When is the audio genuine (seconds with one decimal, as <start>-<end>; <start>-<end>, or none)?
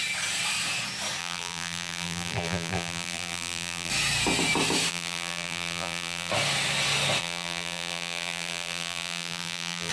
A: 0.0-1.2; 3.9-4.9; 6.3-7.2